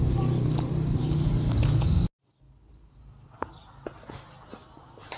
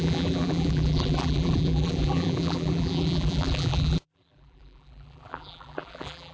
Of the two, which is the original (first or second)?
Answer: first